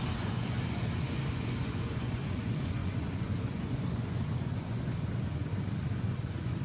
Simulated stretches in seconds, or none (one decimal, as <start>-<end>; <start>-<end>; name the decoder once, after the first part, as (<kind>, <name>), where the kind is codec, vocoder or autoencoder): 0.0-5.5 (vocoder, Vocos); 6.0-6.6